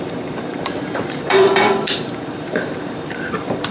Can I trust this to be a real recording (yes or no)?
no